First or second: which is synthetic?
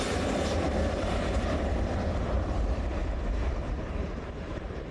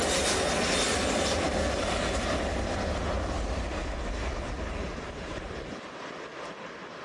first